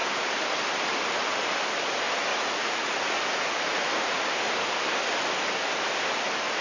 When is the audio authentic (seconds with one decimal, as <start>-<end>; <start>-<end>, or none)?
0.0-2.3; 3.9-6.6